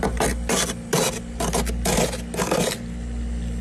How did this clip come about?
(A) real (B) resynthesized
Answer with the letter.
A